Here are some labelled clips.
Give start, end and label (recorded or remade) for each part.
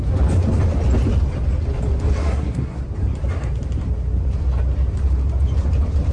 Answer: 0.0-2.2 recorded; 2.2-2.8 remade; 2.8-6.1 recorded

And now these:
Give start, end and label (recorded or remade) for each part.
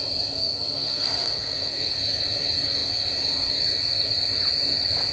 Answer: 0.0-0.4 recorded; 0.4-1.9 remade; 1.9-5.1 recorded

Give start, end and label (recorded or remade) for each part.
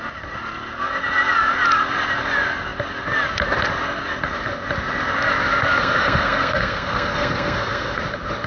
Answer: 0.0-5.8 recorded; 5.8-8.0 remade; 8.0-8.5 recorded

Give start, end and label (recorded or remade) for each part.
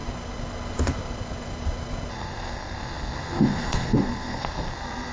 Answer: 0.0-2.1 recorded; 2.1-5.1 remade